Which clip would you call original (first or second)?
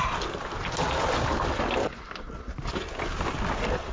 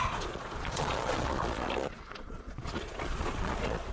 first